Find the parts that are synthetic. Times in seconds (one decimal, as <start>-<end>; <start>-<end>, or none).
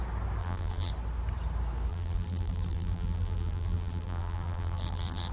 0.4-0.9; 1.9-5.3